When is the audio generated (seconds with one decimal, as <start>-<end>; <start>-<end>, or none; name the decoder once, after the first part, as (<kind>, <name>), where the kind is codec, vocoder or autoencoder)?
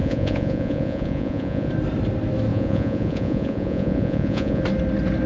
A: 0.0-1.7 (vocoder, Vocos); 2.5-4.6